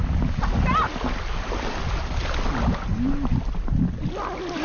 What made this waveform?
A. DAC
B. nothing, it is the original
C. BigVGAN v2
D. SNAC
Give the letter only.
B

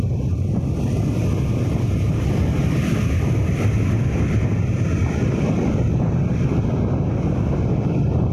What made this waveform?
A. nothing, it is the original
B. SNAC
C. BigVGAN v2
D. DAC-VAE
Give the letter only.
A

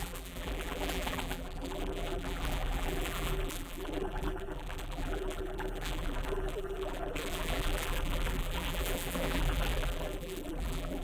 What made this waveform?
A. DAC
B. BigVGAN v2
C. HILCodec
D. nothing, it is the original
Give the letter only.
B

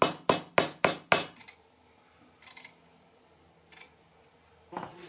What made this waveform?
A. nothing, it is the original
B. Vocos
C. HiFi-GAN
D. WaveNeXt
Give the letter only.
A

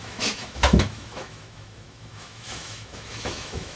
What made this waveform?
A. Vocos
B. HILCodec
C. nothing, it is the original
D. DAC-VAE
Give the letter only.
D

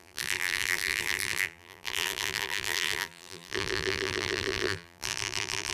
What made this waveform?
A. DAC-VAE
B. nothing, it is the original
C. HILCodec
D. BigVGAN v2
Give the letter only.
D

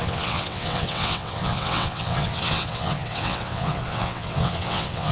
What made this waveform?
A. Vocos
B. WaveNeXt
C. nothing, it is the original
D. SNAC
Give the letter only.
B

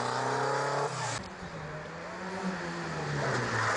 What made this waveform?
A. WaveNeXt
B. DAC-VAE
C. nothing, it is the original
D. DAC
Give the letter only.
C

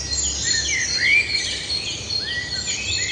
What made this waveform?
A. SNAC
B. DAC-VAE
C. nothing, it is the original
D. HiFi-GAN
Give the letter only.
C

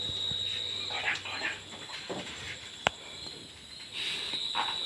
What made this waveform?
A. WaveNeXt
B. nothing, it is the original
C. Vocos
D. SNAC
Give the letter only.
B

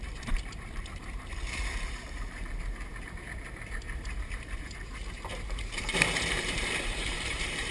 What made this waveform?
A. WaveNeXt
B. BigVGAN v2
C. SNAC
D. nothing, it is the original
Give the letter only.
B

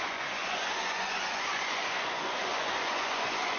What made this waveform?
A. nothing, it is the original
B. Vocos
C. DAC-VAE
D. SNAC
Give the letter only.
B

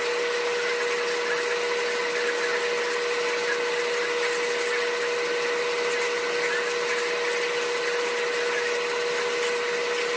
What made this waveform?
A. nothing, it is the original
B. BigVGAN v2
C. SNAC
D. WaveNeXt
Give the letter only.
A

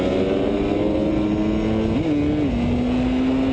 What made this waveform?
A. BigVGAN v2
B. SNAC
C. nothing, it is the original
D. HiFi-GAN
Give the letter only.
C